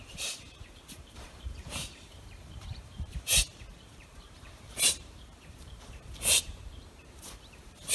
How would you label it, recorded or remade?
remade